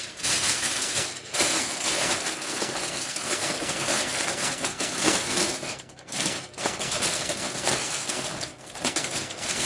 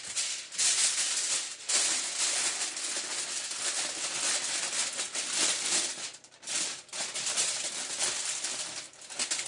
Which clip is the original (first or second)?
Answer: second